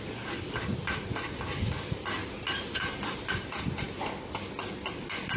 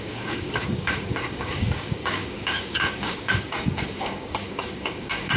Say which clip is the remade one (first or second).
second